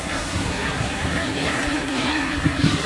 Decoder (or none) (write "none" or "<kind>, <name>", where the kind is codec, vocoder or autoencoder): codec, SNAC